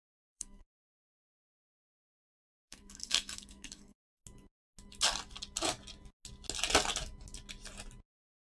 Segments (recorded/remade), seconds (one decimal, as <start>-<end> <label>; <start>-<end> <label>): 0.0-4.2 remade; 4.2-8.5 recorded